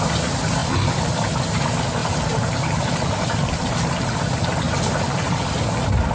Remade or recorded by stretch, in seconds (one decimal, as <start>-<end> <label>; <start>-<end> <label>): 0.0-0.6 recorded; 0.6-1.4 remade; 1.4-2.0 recorded; 2.0-6.1 remade